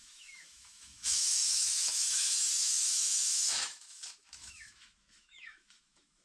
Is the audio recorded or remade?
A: remade